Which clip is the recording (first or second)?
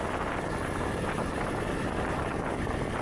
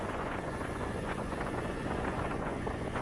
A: first